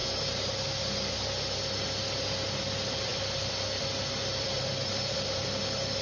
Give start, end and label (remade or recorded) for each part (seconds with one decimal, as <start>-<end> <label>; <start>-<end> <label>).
0.0-3.1 recorded; 3.1-5.6 remade; 5.6-6.0 recorded